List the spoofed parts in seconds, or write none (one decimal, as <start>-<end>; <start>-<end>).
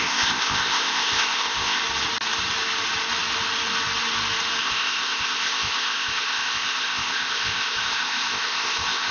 0.0-1.8; 4.6-9.1